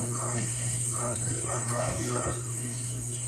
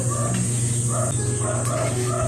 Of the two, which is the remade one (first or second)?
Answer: first